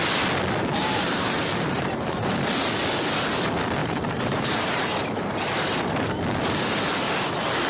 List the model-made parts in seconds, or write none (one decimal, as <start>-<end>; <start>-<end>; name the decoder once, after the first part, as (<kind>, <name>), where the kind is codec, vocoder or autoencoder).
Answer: 0.8-2.5 (vocoder, BigVGAN v2); 3.8-6.2